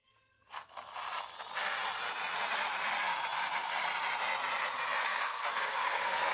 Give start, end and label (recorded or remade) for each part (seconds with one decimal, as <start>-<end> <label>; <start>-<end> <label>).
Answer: 0.0-0.7 remade; 0.7-5.0 recorded; 5.0-6.3 remade